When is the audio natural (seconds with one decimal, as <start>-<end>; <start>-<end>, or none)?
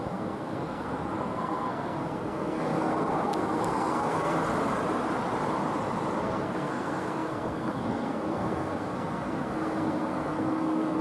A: 4.4-6.2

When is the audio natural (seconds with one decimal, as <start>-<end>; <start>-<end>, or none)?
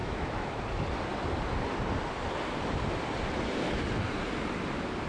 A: 0.6-5.1